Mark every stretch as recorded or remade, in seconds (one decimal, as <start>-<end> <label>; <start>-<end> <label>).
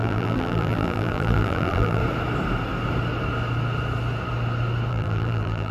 0.0-2.0 remade; 2.0-4.9 recorded; 4.9-5.7 remade